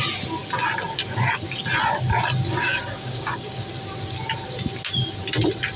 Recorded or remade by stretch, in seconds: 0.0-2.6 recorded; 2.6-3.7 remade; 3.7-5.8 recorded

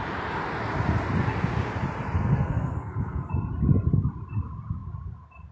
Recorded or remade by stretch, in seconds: 0.0-2.2 recorded; 2.2-3.3 remade; 3.3-5.5 recorded

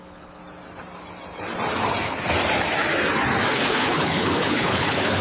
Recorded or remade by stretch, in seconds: 0.0-0.4 remade; 0.4-3.5 recorded; 3.5-5.2 remade

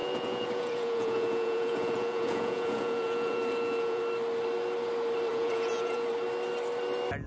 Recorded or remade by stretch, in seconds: 0.0-4.0 remade; 4.0-5.3 recorded; 5.3-6.1 remade; 6.1-7.3 recorded

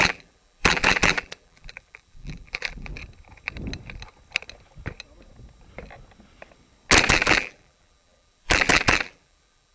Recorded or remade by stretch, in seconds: 0.0-3.0 remade; 3.0-7.1 recorded; 7.1-9.7 remade